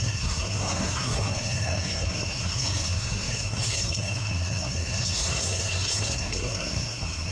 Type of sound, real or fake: fake